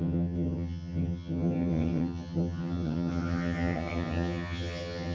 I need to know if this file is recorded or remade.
remade